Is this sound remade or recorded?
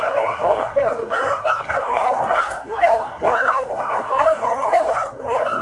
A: remade